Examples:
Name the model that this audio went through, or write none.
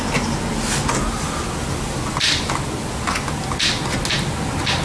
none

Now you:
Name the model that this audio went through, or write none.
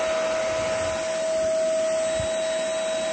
none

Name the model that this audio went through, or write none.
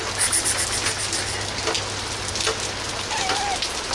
none